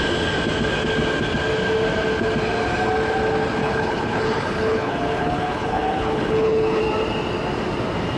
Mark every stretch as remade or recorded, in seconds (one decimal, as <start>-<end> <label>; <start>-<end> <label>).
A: 0.0-3.6 recorded; 3.6-6.8 remade; 6.8-8.2 recorded